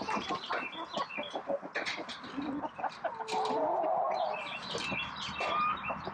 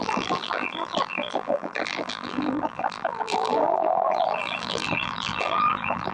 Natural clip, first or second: first